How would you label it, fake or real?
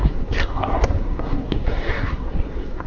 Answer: fake